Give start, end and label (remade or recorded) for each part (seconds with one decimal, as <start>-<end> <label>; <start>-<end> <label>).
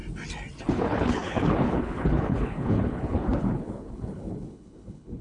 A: 0.0-0.7 recorded; 0.7-5.2 remade